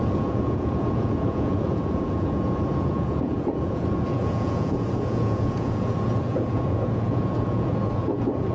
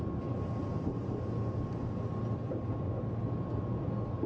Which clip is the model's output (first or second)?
first